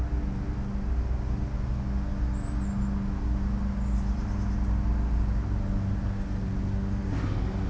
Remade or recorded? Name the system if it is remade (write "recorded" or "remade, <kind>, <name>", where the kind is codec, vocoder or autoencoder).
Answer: recorded